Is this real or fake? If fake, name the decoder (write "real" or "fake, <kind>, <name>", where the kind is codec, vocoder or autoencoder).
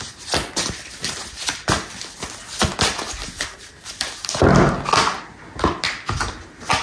real